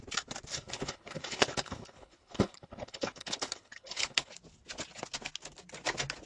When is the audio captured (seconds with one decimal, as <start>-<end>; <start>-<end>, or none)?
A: 0.0-0.5; 4.3-6.3